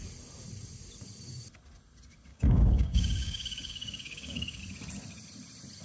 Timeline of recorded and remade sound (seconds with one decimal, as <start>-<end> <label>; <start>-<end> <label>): 0.0-2.3 recorded; 2.3-4.6 remade; 4.6-5.8 recorded